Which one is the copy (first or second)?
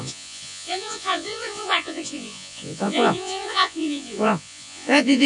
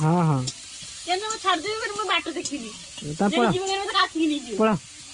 first